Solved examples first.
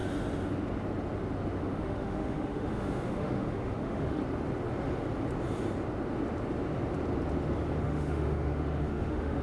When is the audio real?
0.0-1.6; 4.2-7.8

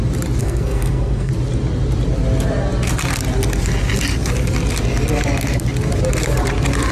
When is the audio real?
0.0-0.4; 1.3-6.9

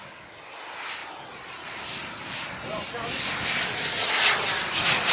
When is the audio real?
0.0-5.1

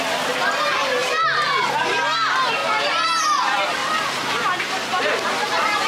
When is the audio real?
2.6-3.2

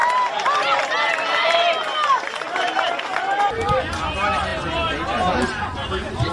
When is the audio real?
0.0-6.3

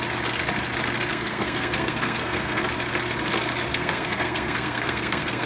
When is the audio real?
0.0-1.1; 2.6-3.7